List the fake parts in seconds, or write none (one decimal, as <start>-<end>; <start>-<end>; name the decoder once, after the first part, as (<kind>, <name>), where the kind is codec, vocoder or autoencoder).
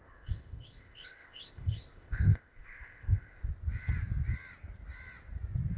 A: 0.0-3.5 (codec, ZipCodec)